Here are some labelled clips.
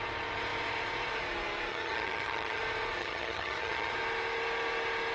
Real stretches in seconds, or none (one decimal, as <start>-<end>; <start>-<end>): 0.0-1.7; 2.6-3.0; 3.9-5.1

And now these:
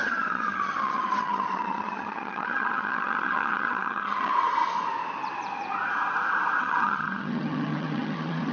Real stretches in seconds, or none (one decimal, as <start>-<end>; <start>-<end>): 4.3-6.6

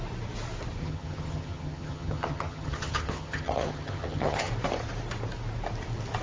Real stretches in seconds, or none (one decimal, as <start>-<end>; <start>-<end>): 0.0-0.8; 4.5-6.2

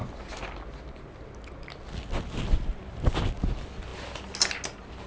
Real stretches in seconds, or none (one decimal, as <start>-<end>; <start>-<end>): 0.0-5.1

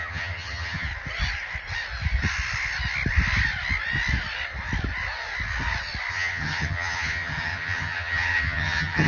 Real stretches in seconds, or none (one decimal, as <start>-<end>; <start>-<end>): 0.9-6.1

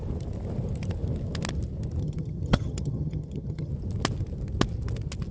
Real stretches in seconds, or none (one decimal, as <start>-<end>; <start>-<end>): 0.0-2.0; 3.7-5.3

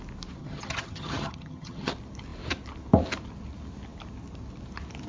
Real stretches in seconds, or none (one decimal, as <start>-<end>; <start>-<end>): 0.0-0.4; 1.9-5.1

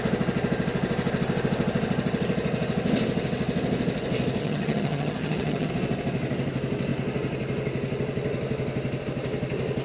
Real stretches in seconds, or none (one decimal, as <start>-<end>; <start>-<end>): 0.0-4.4; 5.7-9.8